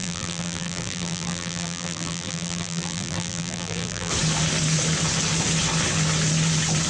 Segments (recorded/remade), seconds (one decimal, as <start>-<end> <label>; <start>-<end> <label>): 0.0-4.1 remade; 4.1-6.9 recorded

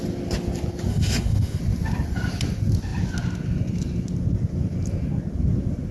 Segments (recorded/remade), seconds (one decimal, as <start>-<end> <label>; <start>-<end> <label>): 0.0-0.9 recorded; 0.9-1.6 remade; 1.6-5.9 recorded

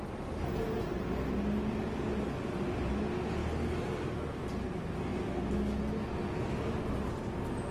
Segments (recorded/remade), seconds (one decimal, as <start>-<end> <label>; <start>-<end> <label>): 0.0-7.7 recorded